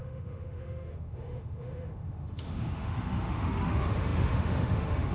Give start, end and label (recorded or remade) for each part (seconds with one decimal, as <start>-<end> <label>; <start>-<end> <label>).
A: 0.0-5.1 remade